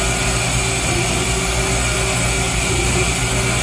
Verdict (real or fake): real